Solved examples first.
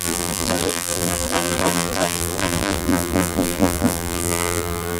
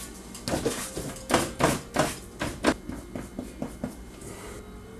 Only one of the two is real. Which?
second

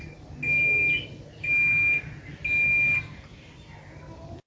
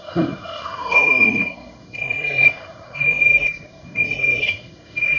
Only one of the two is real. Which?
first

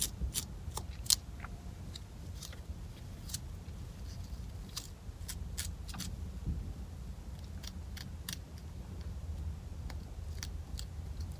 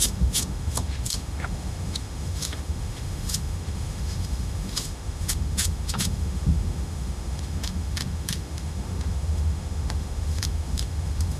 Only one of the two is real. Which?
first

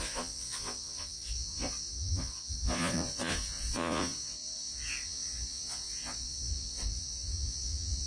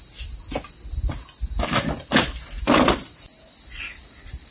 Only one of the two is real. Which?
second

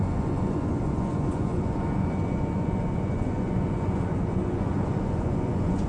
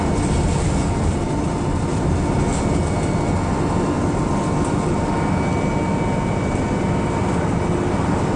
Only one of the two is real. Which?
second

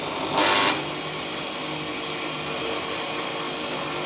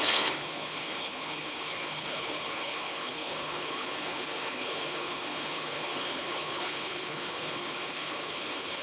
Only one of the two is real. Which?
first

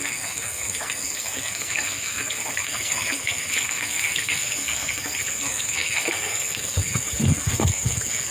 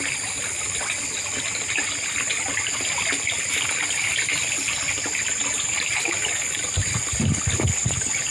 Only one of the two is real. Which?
second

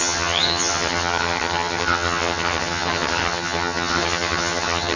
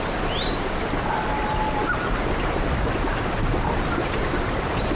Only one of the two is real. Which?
second